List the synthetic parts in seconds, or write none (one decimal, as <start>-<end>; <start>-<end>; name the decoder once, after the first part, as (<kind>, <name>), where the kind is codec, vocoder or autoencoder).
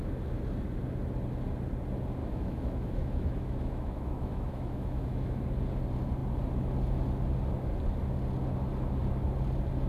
2.2-5.4 (autoencoder, DAC-VAE)